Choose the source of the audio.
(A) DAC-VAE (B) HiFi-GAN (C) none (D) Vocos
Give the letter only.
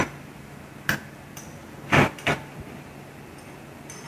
C